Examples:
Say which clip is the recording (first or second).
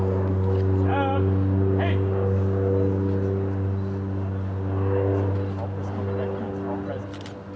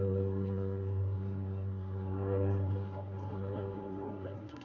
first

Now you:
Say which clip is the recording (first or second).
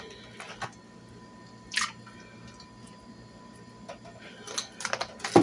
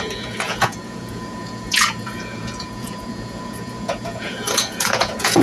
first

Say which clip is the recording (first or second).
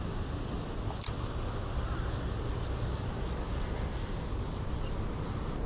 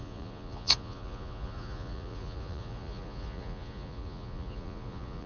first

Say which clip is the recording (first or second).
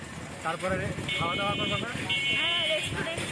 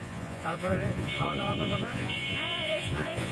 first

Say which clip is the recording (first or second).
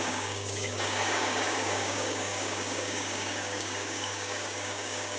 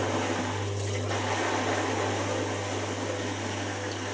second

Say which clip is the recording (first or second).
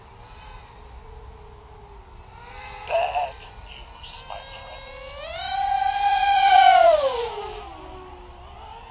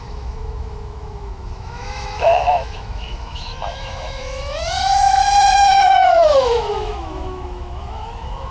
first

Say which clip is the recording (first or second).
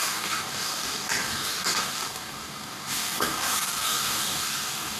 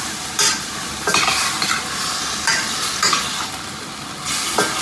second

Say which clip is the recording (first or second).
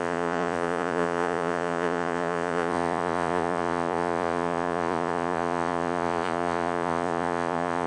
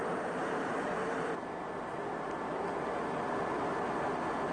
second